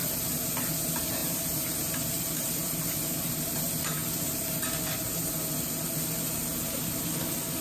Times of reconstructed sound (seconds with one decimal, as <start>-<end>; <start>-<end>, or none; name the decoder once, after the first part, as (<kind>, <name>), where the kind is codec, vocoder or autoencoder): 1.2-1.9 (vocoder, BigVGAN v2)